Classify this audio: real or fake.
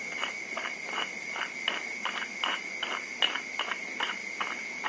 real